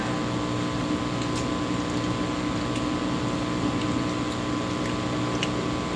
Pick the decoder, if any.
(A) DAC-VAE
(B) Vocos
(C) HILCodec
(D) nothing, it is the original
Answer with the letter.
D